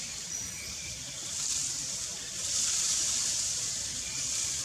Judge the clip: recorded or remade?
recorded